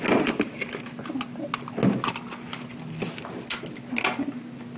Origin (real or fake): real